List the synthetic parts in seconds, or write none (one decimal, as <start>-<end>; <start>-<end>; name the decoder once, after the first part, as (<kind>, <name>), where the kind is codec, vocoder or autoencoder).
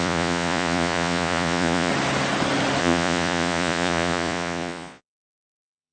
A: 0.0-1.9 (vocoder, Vocos); 2.8-5.9